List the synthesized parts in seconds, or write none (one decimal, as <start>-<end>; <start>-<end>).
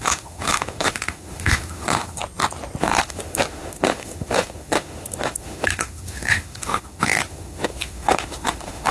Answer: 0.0-2.2; 2.8-8.9